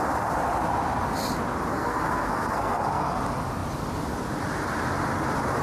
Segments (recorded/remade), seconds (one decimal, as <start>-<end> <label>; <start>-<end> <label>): 0.0-1.7 recorded; 1.7-3.2 remade; 3.2-5.6 recorded